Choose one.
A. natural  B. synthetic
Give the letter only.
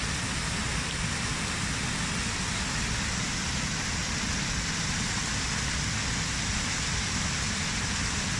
A